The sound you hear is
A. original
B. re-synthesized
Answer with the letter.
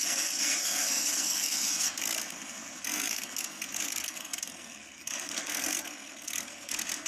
B